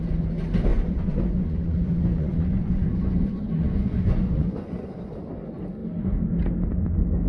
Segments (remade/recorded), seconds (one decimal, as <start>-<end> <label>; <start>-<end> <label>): 0.0-0.7 recorded; 0.7-5.1 remade; 5.1-7.3 recorded